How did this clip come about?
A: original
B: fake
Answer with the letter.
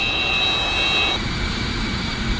A